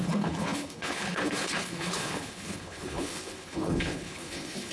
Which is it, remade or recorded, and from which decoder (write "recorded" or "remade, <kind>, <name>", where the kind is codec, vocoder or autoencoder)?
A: remade, codec, HILCodec